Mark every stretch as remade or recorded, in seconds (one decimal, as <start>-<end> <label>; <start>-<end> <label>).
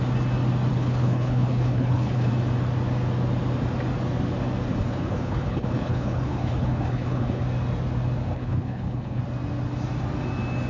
0.0-0.7 recorded; 0.7-2.3 remade; 2.3-4.7 recorded; 4.7-7.4 remade; 7.4-8.3 recorded; 8.3-9.2 remade; 9.2-10.7 recorded